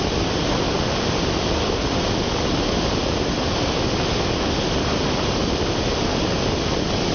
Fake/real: real